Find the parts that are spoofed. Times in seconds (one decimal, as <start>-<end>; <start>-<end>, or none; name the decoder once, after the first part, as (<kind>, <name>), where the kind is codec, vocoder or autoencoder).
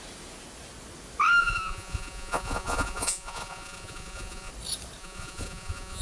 1.4-4.5 (vocoder, Vocos); 5.0-6.0